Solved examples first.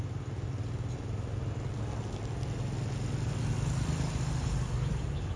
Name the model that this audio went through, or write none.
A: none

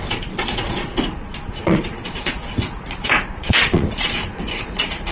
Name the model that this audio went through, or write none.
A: vocoder, Vocos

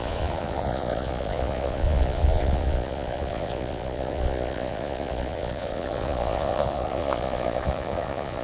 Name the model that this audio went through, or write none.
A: vocoder, Vocos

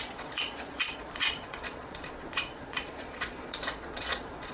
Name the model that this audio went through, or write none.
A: vocoder, Vocos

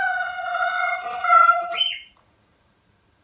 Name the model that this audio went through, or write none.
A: vocoder, Vocos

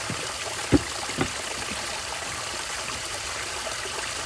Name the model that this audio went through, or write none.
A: none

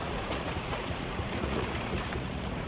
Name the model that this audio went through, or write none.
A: vocoder, Vocos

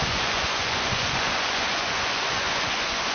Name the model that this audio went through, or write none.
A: vocoder, Vocos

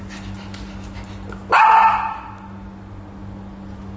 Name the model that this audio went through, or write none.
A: none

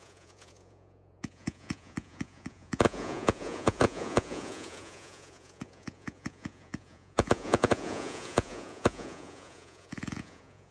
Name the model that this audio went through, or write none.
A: vocoder, Vocos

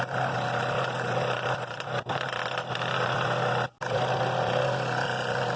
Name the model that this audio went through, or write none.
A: none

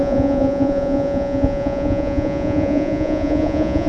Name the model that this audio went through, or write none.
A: vocoder, Vocos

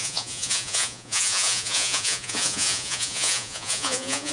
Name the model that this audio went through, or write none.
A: vocoder, Vocos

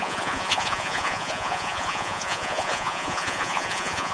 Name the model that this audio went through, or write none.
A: vocoder, Vocos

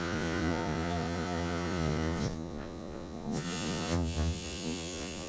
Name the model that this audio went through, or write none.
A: vocoder, Vocos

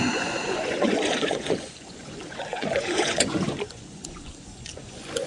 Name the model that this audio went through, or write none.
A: vocoder, Vocos